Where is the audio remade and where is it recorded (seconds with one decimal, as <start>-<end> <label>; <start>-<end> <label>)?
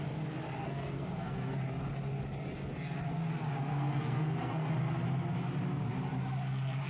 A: 0.0-0.6 recorded; 0.6-1.5 remade; 1.5-3.7 recorded; 3.7-4.7 remade; 4.7-6.9 recorded